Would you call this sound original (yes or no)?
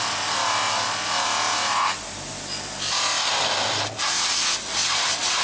yes